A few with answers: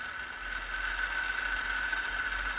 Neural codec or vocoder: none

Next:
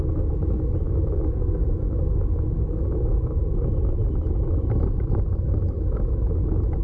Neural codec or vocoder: autoencoder, DAC-VAE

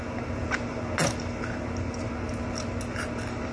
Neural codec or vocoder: none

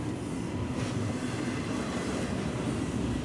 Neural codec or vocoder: none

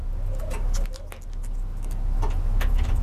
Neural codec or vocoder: none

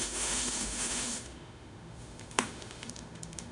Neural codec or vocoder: autoencoder, DAC-VAE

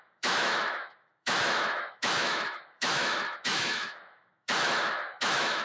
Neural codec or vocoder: autoencoder, DAC-VAE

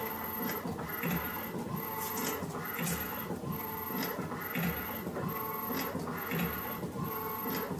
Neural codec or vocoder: none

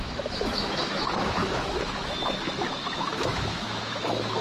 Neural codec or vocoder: autoencoder, DAC-VAE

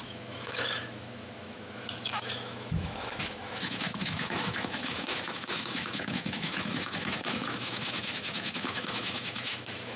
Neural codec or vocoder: autoencoder, DAC-VAE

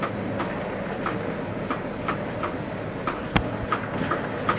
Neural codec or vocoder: none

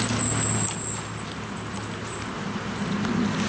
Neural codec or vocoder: none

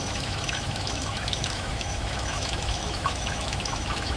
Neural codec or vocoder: autoencoder, DAC-VAE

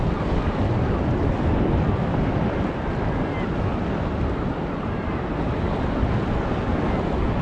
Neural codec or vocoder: none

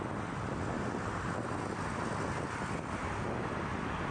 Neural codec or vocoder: none